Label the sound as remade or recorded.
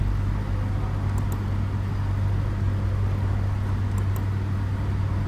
recorded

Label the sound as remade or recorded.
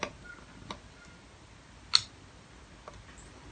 recorded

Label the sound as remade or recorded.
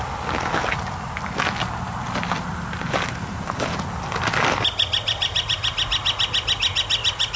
recorded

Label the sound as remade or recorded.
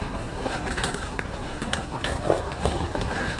remade